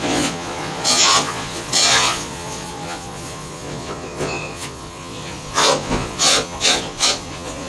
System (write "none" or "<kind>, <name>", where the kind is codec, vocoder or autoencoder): vocoder, Vocos